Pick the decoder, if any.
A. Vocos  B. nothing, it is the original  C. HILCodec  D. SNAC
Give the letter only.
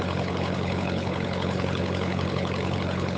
C